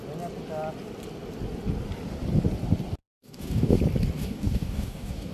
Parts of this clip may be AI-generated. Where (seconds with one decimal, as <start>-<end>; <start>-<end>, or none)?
3.0-3.8; 4.2-5.3